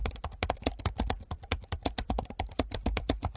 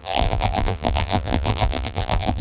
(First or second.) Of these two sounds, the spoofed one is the second